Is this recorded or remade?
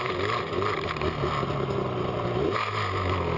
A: recorded